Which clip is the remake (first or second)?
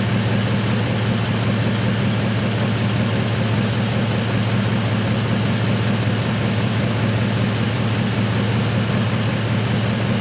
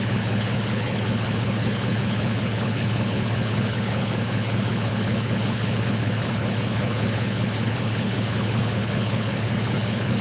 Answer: second